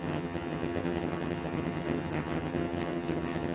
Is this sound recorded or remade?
remade